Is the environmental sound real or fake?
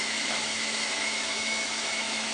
fake